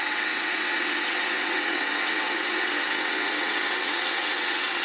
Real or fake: fake